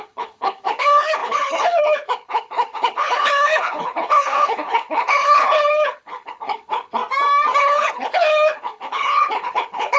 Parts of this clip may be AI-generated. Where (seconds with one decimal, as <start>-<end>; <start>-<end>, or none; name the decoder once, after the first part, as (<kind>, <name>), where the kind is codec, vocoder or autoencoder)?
0.0-7.0 (codec, HILCodec); 7.6-10.0